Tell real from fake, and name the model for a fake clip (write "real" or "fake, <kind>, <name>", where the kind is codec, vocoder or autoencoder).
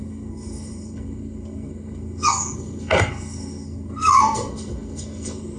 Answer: fake, codec, SNAC